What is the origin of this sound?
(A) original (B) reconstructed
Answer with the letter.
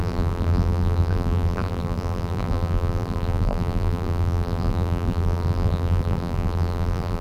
B